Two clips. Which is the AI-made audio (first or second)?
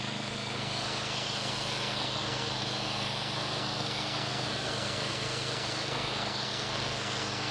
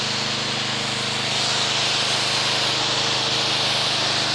first